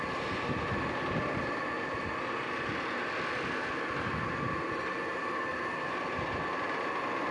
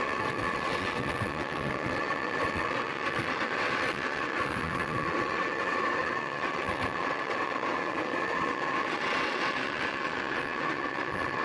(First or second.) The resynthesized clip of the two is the second